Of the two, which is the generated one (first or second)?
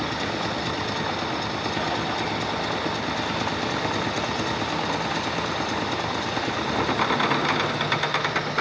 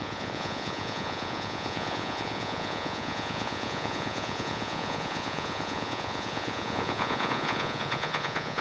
second